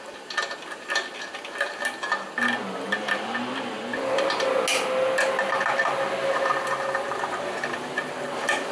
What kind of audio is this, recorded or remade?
recorded